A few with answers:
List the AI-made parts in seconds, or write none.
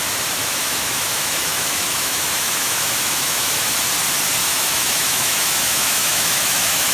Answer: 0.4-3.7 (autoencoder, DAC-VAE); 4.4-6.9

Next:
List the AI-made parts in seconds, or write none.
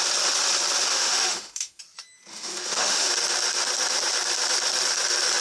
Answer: 0.9-1.8 (autoencoder, DAC-VAE); 2.3-3.1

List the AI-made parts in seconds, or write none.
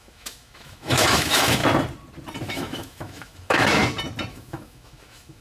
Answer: 0.0-1.6 (autoencoder, DAC-VAE); 2.5-3.8; 4.3-5.4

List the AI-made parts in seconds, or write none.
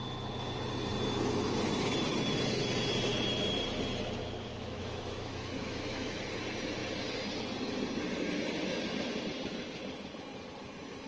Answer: 4.5-6.2 (autoencoder, DAC-VAE)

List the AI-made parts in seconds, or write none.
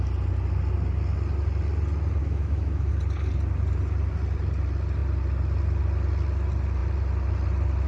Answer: 2.2-2.9 (autoencoder, DAC-VAE)